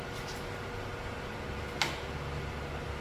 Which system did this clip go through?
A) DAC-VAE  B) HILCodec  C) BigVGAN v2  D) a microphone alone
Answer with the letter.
D